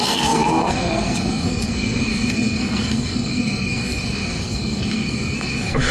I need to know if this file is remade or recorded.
remade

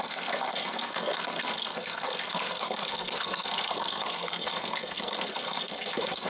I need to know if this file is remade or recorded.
remade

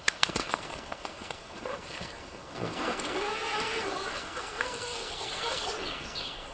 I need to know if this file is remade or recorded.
remade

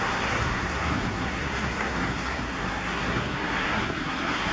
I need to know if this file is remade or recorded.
remade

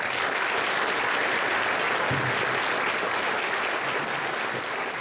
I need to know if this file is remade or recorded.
recorded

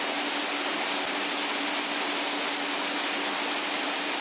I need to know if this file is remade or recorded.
recorded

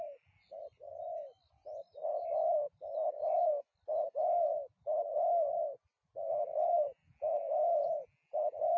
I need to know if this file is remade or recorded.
recorded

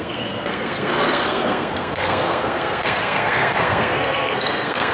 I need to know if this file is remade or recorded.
remade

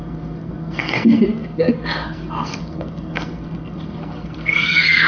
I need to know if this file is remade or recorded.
remade